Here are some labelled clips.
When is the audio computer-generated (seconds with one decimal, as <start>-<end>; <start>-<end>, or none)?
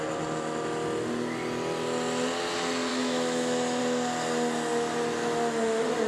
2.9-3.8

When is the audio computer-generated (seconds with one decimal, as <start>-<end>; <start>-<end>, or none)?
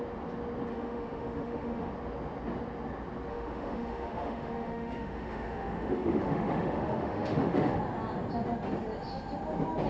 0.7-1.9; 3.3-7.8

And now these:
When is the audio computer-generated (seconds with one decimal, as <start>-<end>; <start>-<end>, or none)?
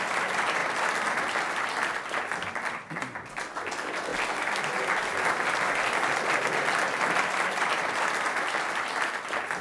none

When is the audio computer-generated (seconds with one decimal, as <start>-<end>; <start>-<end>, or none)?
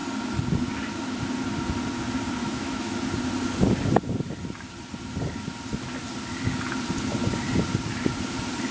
2.4-3.0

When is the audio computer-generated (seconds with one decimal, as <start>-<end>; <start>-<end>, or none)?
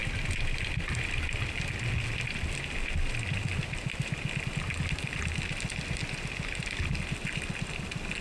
none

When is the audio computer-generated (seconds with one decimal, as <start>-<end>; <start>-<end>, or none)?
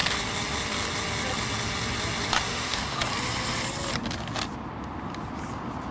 2.5-3.0